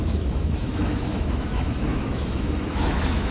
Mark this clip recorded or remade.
remade